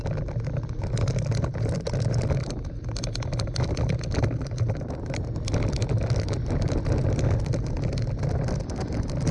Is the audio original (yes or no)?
yes